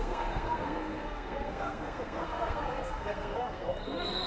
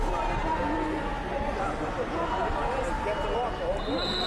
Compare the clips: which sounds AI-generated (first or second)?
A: first